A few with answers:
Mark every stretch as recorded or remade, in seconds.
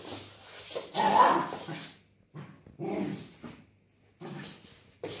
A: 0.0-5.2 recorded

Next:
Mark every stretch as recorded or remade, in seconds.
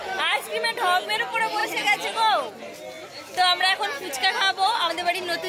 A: 0.0-5.5 recorded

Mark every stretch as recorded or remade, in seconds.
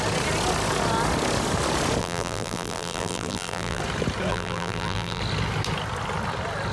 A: 0.0-2.0 recorded; 2.0-3.8 remade; 3.8-4.3 recorded; 4.3-5.2 remade; 5.2-6.7 recorded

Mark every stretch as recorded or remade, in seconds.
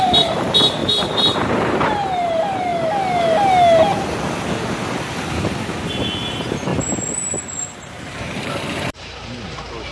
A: 0.0-2.7 remade; 2.7-6.3 recorded; 6.3-6.7 remade; 6.7-7.4 recorded; 7.4-9.9 remade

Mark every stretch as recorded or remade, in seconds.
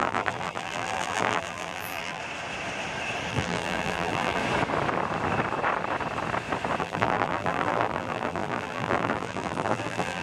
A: 0.0-2.2 remade; 2.2-3.3 recorded; 3.3-4.4 remade; 4.4-6.8 recorded; 6.8-10.2 remade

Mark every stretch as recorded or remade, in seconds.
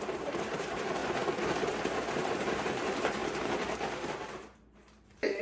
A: 0.0-1.0 remade; 1.0-2.2 recorded; 2.2-5.4 remade